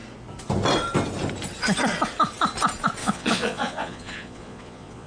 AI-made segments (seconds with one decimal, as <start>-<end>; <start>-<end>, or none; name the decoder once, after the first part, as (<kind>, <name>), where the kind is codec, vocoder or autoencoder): 3.0-5.1 (vocoder, Vocos)

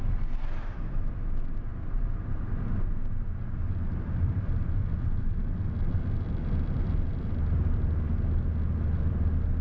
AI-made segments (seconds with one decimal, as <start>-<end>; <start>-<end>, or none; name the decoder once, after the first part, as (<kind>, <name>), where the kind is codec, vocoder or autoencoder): none

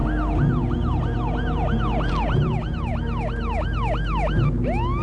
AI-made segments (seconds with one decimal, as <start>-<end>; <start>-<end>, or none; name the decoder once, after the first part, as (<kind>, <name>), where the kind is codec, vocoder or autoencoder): none

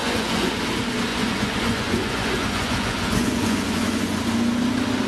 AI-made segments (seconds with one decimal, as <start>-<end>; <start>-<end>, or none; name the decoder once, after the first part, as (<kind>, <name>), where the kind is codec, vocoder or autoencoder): 0.0-0.5 (vocoder, Vocos); 1.1-4.2